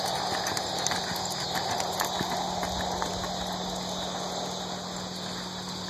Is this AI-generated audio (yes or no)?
no